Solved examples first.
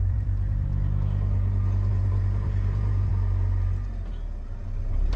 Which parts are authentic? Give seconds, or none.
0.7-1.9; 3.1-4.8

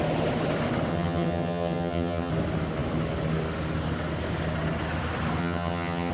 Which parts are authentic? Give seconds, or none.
0.0-0.9; 2.3-5.4

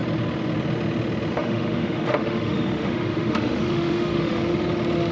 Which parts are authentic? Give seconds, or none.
0.0-1.3; 4.4-5.1

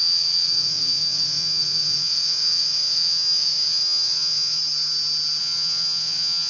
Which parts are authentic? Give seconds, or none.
4.6-5.4